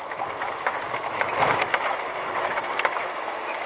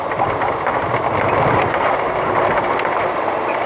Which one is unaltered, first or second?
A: second